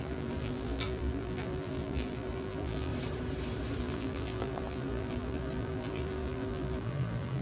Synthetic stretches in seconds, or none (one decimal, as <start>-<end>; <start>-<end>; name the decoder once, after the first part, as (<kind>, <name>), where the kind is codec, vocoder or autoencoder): 0.0-2.9 (vocoder, BigVGAN v2); 3.8-7.4